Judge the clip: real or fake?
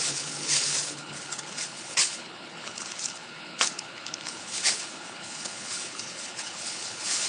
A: fake